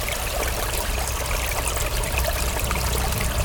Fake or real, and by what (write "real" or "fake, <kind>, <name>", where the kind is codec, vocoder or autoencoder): real